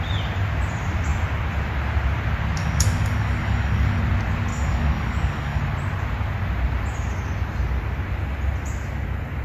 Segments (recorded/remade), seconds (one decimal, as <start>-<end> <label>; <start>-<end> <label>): 0.0-2.6 recorded; 2.6-4.0 remade; 4.0-4.5 recorded; 4.5-5.6 remade; 5.6-9.4 recorded